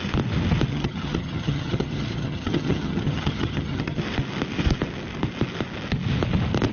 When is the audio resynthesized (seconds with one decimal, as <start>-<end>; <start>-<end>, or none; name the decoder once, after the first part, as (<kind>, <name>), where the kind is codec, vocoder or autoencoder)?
0.7-4.0 (vocoder, HiFi-GAN)